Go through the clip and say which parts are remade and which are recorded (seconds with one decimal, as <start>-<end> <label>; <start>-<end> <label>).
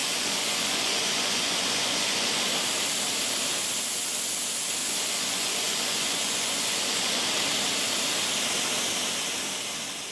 0.0-2.4 remade; 2.4-4.8 recorded; 4.8-7.2 remade; 7.2-10.1 recorded